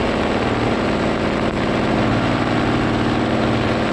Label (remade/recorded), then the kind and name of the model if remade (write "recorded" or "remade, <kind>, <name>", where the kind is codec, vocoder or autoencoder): recorded